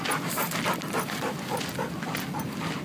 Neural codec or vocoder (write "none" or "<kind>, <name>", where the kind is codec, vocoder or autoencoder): none